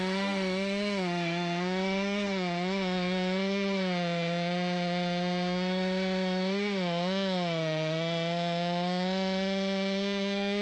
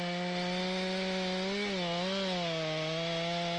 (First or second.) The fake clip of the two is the first